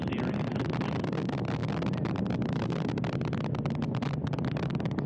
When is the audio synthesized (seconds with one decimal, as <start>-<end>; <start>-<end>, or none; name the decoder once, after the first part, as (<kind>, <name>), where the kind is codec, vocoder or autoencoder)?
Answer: none